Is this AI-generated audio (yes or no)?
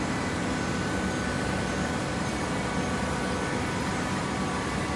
no